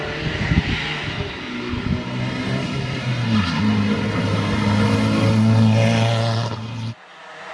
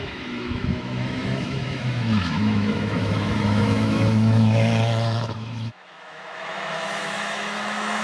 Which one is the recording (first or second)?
first